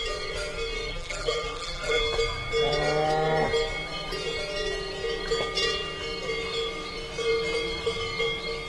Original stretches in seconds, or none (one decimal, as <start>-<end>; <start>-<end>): 0.0-0.9; 2.0-8.7